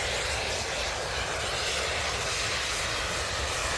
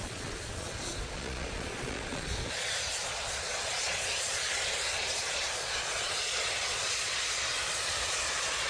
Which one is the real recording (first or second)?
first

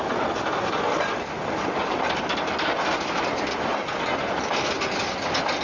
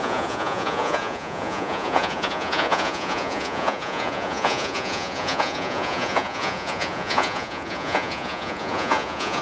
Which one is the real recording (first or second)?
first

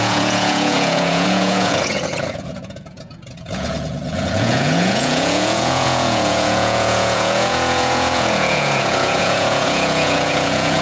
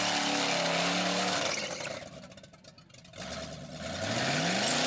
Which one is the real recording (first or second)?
second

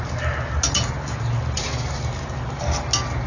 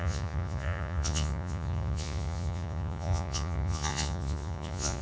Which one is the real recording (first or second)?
first